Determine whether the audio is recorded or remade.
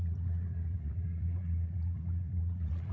remade